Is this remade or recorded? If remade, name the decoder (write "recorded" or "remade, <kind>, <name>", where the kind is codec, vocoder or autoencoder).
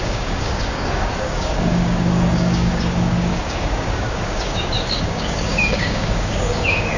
remade, codec, DAC